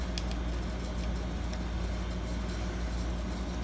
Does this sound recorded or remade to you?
recorded